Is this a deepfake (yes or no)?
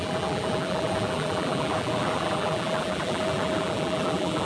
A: yes